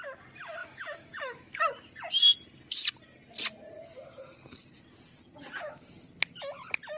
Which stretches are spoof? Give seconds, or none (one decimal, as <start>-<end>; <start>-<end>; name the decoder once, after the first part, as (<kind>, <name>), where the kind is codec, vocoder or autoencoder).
0.6-1.7 (autoencoder, DAC-VAE)